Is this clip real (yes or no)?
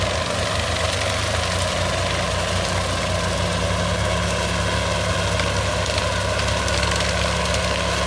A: yes